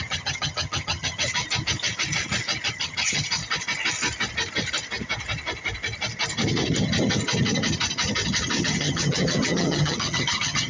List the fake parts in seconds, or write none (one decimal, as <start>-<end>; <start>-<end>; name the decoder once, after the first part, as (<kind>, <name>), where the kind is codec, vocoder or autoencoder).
0.0-1.4 (vocoder, HiFi-GAN); 2.7-3.4; 8.6-10.7